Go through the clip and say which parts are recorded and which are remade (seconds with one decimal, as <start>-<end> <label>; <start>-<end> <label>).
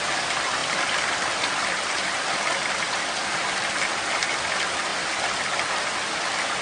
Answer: 0.0-0.6 recorded; 0.6-3.0 remade; 3.0-4.9 recorded; 4.9-5.7 remade; 5.7-6.6 recorded